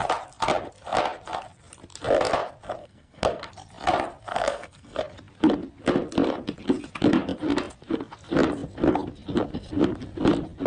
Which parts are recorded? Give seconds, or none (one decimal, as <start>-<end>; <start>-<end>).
0.0-2.8; 3.5-4.3; 5.0-10.7